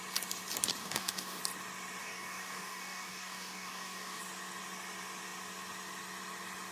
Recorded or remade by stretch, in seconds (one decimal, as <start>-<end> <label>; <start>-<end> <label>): 0.0-0.8 recorded; 0.8-1.4 remade; 1.4-2.0 recorded; 2.0-4.2 remade; 4.2-6.7 recorded